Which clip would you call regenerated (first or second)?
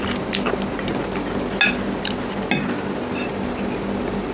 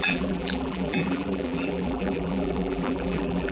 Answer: second